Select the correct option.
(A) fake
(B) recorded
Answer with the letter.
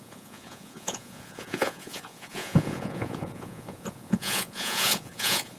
A